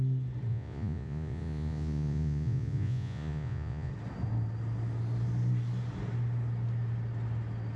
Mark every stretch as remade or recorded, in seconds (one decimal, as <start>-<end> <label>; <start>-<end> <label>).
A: 0.0-0.5 recorded; 0.5-3.9 remade; 3.9-7.8 recorded

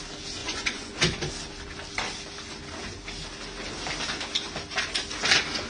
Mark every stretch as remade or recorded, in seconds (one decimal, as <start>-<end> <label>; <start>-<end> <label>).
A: 0.0-0.4 recorded; 0.4-1.3 remade; 1.3-5.7 recorded